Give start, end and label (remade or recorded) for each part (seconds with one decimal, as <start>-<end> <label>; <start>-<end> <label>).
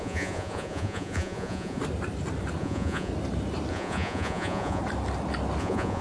0.0-1.8 remade; 1.8-2.6 recorded; 2.6-3.1 remade; 3.1-3.7 recorded; 3.7-4.8 remade; 4.8-5.6 recorded; 5.6-6.0 remade